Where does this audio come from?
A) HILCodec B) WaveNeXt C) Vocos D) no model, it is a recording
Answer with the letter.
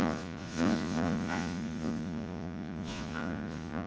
C